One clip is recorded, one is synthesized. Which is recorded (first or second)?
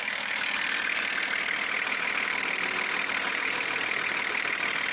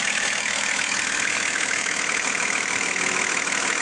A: first